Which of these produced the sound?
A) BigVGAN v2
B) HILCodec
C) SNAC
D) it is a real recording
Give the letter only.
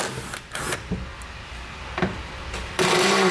D